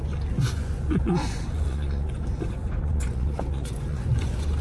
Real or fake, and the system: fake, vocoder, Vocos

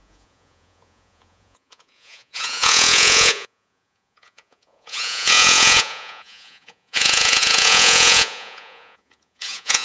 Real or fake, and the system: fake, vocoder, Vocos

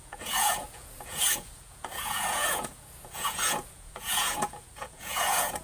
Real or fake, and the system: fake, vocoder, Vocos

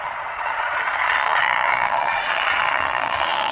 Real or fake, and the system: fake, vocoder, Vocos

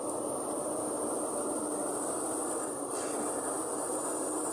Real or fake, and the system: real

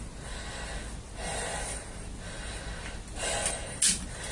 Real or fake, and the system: real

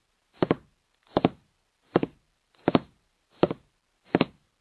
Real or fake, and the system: real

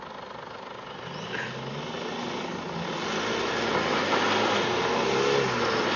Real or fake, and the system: real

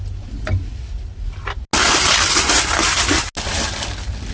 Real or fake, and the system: real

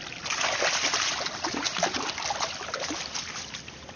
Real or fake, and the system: real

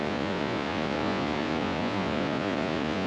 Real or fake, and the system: fake, vocoder, Vocos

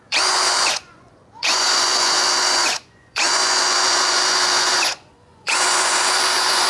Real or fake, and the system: fake, vocoder, Vocos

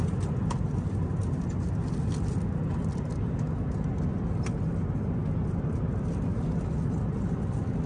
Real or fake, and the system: real